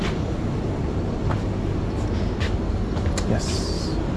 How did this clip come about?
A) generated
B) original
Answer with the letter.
B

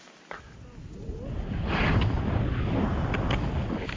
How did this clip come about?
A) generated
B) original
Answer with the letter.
B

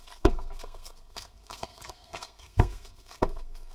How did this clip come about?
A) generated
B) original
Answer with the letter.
A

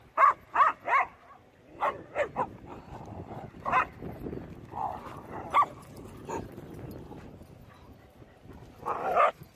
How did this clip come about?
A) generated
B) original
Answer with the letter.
B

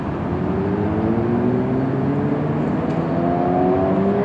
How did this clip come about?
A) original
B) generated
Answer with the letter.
A